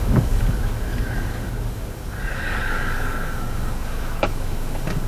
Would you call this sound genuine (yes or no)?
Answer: no